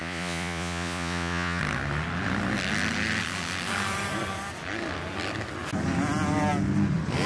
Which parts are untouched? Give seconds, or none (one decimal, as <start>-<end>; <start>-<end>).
1.6-7.3